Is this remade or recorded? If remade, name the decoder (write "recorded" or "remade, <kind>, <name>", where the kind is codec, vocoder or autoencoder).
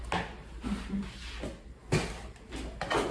recorded